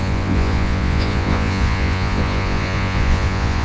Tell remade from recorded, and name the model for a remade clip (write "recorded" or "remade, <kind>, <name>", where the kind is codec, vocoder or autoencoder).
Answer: remade, vocoder, Vocos